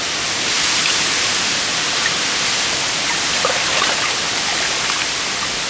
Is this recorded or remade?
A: recorded